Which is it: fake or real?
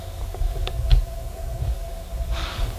fake